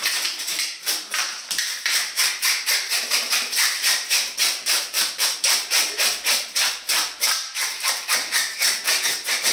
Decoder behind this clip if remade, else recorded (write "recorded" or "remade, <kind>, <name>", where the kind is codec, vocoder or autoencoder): remade, vocoder, BigVGAN v2